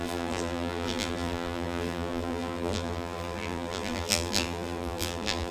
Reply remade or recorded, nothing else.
remade